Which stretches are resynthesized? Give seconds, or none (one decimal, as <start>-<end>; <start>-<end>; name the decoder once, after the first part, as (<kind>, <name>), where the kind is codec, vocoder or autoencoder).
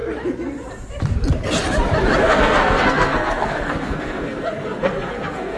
2.2-5.6 (codec, SNAC)